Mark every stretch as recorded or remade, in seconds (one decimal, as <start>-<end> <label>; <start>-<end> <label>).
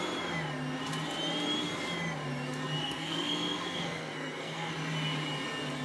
0.0-2.8 recorded; 2.8-4.7 remade; 4.7-5.8 recorded